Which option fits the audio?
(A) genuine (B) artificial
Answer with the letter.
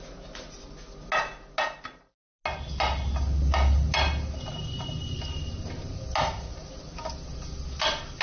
A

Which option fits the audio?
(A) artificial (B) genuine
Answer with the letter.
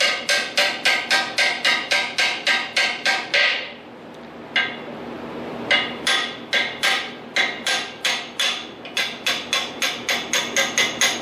B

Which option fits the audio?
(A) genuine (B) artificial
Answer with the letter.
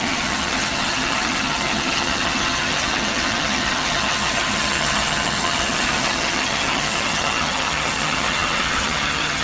B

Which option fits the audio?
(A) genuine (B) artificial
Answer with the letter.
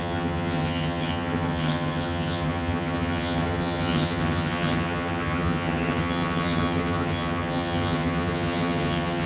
B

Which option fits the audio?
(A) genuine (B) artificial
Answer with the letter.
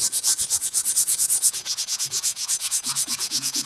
B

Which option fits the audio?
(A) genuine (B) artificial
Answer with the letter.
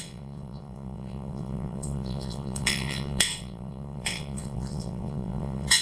B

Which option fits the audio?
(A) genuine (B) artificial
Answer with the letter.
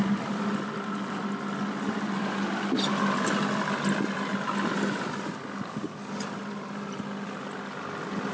A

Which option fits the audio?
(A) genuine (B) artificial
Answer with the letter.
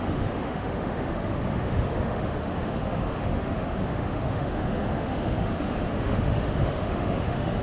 B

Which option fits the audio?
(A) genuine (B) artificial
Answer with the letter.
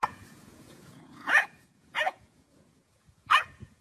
B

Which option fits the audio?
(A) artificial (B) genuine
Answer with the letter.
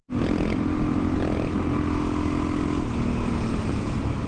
B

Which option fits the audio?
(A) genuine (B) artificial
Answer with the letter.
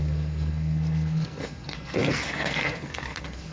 B